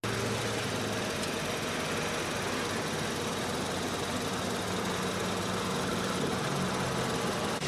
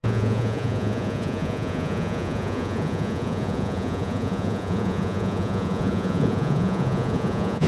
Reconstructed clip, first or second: second